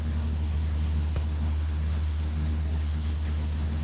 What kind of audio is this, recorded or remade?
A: remade